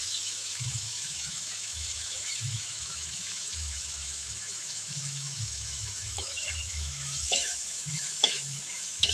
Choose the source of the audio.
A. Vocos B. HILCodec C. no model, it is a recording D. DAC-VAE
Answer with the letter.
D